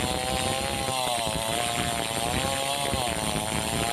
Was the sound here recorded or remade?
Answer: recorded